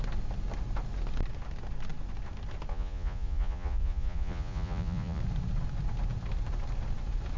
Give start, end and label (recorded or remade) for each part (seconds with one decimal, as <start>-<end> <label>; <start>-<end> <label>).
0.0-2.7 recorded; 2.7-5.2 remade; 5.2-7.4 recorded